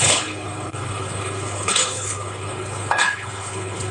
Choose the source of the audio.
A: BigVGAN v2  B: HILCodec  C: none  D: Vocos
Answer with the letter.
B